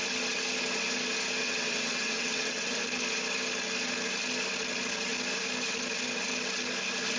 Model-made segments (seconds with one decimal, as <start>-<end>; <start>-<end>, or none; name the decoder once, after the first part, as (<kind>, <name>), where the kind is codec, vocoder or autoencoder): 1.4-2.7 (vocoder, WaveNeXt)